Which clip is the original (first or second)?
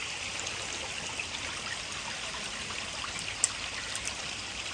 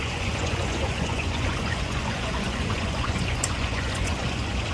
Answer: first